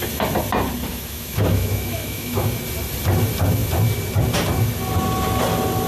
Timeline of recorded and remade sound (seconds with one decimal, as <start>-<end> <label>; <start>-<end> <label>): 0.0-0.9 recorded; 0.9-2.6 remade; 2.6-5.9 recorded